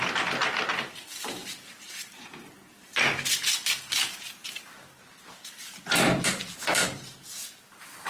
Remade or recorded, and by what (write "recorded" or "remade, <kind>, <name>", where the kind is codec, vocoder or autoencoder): remade, vocoder, BigVGAN v2